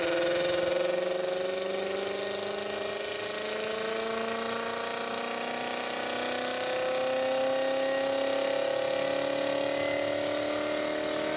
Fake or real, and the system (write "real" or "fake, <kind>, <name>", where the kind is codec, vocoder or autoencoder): real